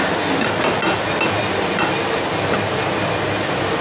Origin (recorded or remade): recorded